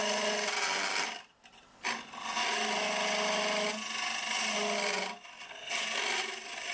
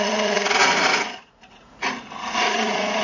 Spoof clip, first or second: second